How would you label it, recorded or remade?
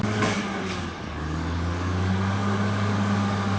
remade